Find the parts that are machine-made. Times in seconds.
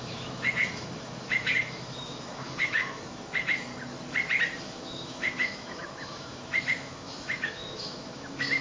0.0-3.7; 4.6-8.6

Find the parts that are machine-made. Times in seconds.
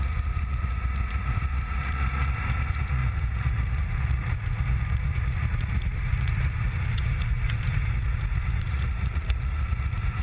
0.0-10.2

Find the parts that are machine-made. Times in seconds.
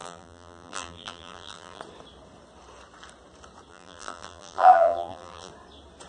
0.0-1.8; 3.7-5.5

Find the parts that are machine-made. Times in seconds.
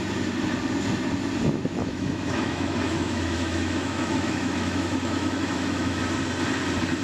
1.8-6.0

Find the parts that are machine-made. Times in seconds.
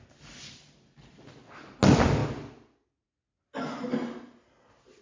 none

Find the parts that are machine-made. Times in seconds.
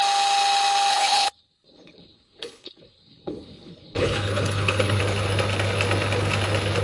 0.9-5.0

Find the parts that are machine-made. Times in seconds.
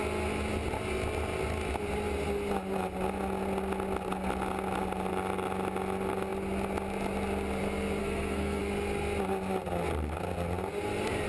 8.0-8.6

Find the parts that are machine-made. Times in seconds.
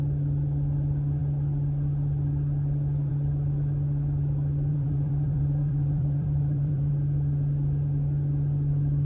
4.7-6.9